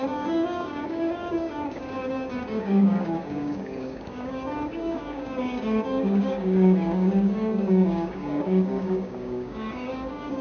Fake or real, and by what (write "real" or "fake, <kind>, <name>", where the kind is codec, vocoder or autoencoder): fake, codec, DAC